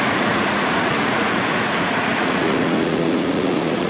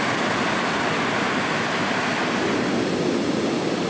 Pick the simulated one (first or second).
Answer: first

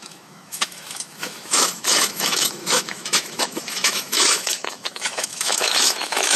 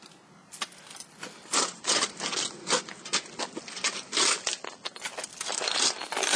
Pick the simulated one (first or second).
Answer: first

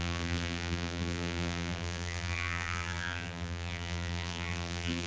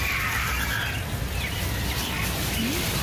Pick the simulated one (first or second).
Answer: first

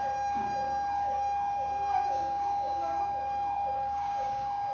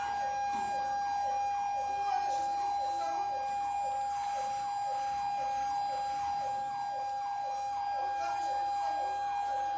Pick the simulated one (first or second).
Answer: first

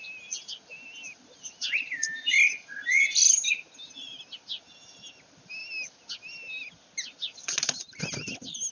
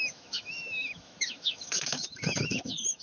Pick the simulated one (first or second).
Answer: second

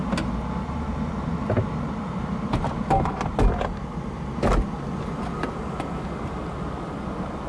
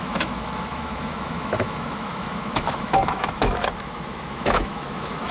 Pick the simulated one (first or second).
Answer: second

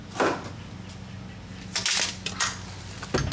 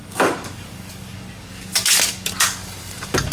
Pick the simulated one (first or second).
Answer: second